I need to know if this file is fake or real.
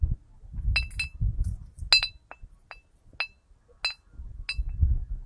real